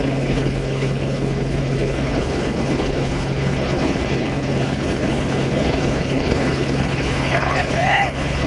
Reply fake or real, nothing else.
fake